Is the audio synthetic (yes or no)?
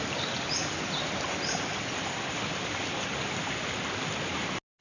no